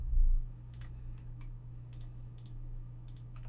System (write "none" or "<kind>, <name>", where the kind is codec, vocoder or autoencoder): autoencoder, DAC-VAE